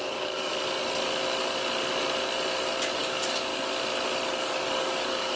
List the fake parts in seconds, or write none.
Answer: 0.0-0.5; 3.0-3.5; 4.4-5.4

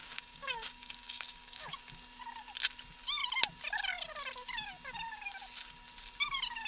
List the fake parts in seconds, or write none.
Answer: 0.0-1.7

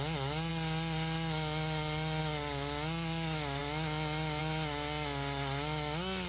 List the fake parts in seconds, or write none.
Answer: none